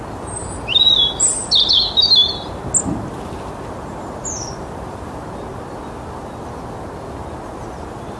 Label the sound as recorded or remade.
recorded